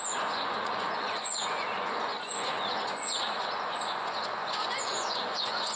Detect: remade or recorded remade